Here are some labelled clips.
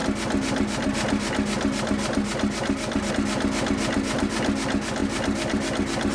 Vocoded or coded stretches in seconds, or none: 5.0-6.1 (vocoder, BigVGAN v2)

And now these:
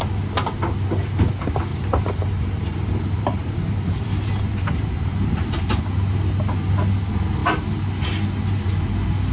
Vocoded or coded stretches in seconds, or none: 1.7-5.8 (vocoder, BigVGAN v2)

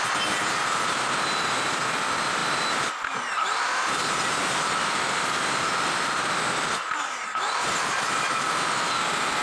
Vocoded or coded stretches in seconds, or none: none

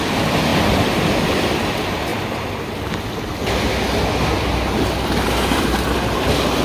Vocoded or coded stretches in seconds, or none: none